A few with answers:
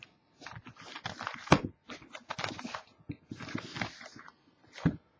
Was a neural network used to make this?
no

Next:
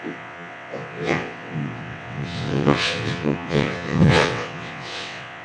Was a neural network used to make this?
yes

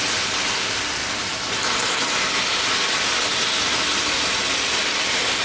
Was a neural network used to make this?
no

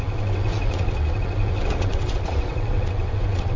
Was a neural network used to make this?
yes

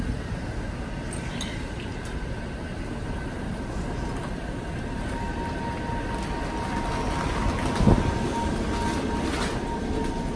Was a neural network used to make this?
no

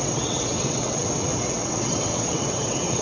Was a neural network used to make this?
yes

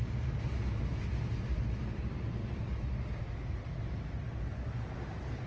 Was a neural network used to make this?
no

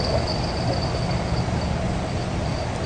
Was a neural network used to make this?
no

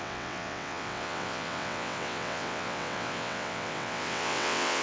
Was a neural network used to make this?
yes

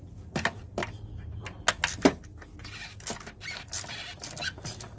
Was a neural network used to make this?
no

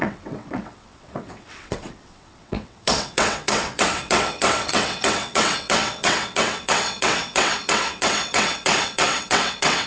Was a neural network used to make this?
yes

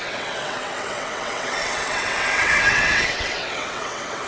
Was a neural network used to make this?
yes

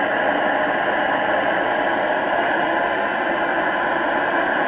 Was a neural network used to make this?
no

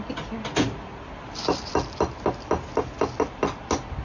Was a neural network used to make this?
no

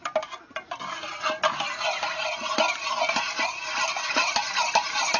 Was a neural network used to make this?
no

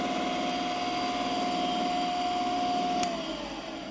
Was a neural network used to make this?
no